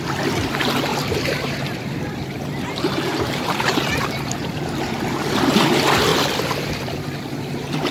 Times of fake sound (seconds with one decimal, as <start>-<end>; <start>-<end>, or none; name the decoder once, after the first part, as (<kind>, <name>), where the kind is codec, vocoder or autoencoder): 0.9-4.7 (vocoder, BigVGAN v2)